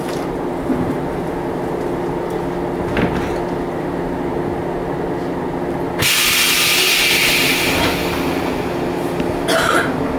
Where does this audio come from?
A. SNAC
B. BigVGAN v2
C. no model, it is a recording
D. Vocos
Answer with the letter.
C